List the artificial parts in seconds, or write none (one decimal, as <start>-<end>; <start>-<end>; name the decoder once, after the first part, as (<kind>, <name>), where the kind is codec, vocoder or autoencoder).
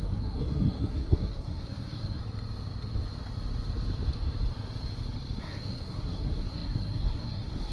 0.0-2.2 (codec, SNAC); 5.4-7.7